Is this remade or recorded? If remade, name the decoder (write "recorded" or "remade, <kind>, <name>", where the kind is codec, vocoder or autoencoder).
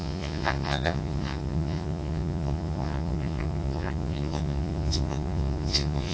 remade, vocoder, Vocos